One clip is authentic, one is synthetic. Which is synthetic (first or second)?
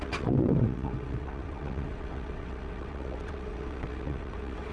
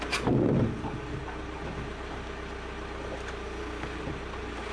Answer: first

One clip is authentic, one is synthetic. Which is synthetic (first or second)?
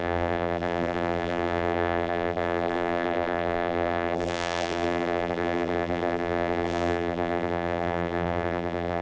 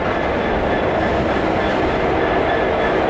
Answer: first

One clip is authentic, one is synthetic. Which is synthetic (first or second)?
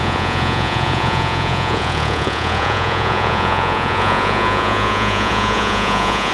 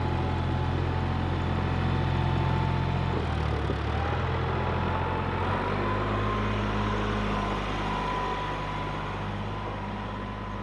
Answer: first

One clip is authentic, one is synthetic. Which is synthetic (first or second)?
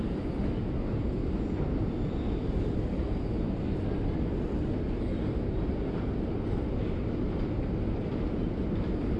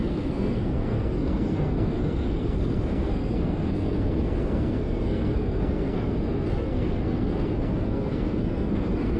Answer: second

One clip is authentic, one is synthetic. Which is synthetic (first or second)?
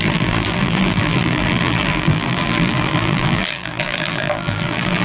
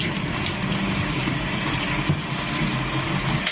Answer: first